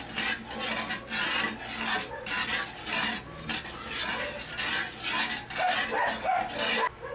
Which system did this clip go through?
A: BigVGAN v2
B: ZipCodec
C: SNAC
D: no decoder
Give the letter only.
D